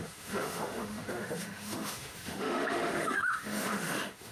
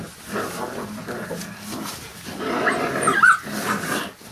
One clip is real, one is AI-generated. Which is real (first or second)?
second